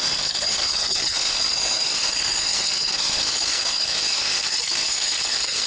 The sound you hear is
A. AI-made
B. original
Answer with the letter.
A